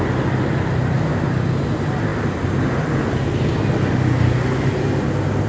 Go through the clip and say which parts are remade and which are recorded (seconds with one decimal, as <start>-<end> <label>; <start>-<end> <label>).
0.0-1.1 recorded; 1.1-1.6 remade; 1.6-5.5 recorded